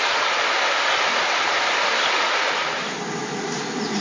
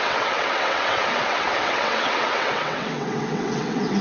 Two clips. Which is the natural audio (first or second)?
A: first